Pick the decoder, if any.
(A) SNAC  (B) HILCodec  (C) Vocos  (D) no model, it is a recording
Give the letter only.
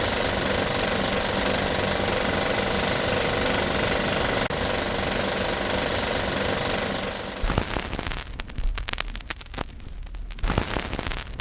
D